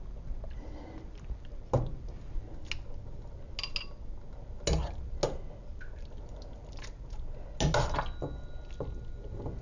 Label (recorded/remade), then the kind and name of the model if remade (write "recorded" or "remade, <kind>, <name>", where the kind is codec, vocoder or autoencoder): recorded